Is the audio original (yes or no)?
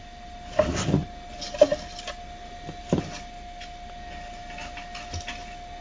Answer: yes